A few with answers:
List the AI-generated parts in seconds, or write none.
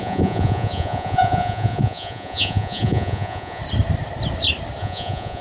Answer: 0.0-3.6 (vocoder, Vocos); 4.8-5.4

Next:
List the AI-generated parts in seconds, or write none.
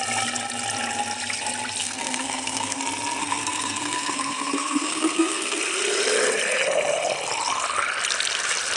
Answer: 1.8-2.8 (codec, SNAC); 3.2-5.6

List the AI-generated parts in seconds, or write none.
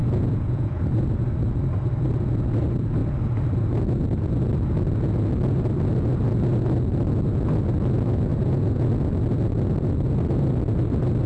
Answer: 0.0-1.2 (vocoder, Vocos); 8.3-8.9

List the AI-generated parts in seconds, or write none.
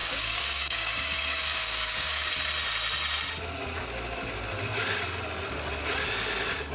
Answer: 0.0-2.3 (codec, DAC)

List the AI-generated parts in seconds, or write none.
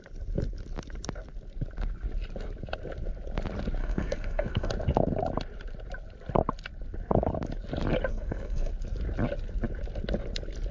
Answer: 3.8-4.7 (codec, SNAC); 8.1-8.7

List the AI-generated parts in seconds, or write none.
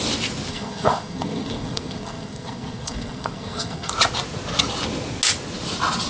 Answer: 0.5-3.9 (codec, SNAC)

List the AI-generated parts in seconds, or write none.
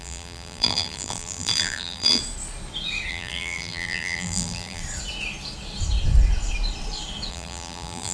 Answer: 0.0-2.2 (vocoder, BigVGAN v2); 3.1-4.8; 7.3-8.1